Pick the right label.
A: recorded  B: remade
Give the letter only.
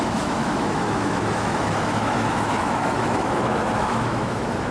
B